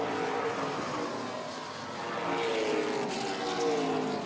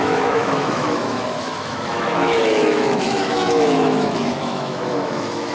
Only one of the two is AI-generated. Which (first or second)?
second